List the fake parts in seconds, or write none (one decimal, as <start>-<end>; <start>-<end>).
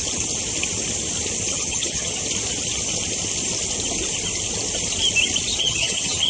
1.5-2.2; 5.6-6.3